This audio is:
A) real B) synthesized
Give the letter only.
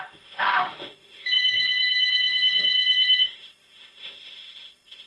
B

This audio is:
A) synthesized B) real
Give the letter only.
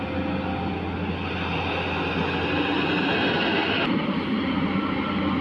B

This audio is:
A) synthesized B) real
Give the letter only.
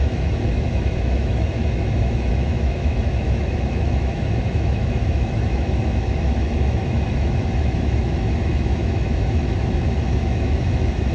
A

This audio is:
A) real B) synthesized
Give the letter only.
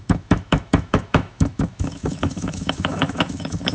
B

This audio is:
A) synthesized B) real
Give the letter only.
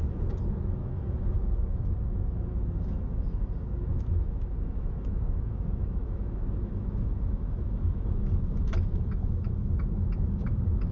A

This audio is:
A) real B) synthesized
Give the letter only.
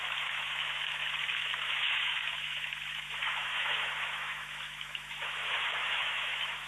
B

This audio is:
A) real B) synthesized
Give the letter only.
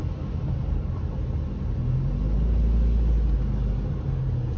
A